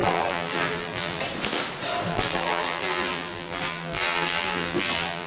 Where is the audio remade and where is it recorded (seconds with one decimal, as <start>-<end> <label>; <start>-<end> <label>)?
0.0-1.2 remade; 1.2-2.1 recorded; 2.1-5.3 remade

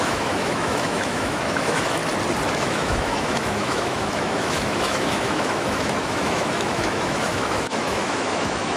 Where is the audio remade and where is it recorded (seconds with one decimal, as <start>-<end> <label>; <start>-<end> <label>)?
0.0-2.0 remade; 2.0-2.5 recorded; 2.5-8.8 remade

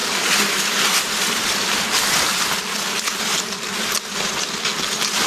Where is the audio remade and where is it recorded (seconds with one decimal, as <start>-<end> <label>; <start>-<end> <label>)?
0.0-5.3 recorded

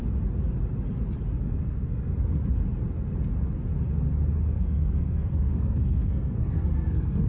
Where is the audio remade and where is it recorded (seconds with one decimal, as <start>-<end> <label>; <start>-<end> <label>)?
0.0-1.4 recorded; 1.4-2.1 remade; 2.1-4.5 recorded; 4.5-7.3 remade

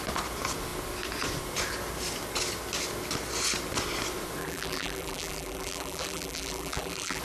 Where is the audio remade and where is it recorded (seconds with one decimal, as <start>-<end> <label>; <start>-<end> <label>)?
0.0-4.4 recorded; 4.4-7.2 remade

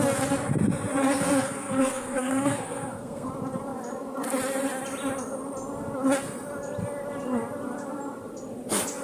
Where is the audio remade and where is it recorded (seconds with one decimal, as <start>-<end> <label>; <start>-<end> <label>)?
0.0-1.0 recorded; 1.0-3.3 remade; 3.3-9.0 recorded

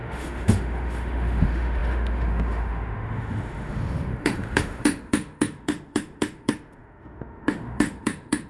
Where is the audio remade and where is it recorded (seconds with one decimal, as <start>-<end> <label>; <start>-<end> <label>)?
0.0-8.5 remade

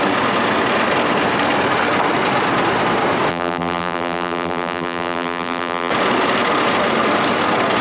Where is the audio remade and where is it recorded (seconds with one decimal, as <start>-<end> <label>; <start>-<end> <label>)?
0.0-3.3 recorded; 3.3-5.9 remade; 5.9-7.8 recorded